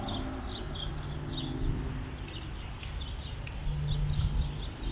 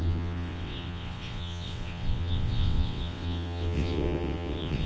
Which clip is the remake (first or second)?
second